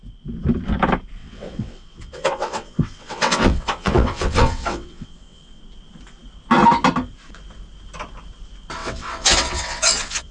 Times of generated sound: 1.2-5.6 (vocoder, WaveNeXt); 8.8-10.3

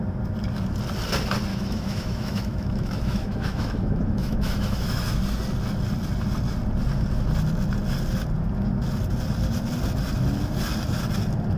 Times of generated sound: 1.5-5.2 (autoencoder, DAC-VAE)

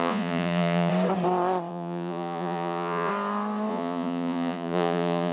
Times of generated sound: 0.0-0.9 (vocoder, Vocos); 1.7-3.1; 3.7-5.3

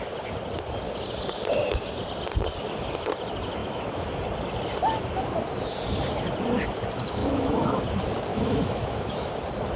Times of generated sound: 3.6-4.2 (autoencoder, DAC-VAE); 7.2-7.8; 8.3-9.3

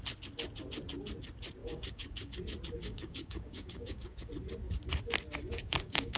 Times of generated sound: 1.6-2.4 (codec, DAC); 2.8-4.3; 5.5-6.2

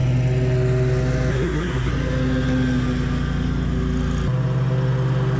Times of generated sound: 1.3-1.9 (codec, SNAC)